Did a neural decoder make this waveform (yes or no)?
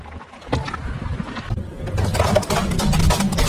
no